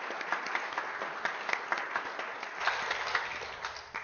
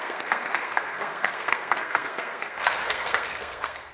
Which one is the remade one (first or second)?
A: second